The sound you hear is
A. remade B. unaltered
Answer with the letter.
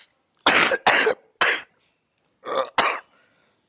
B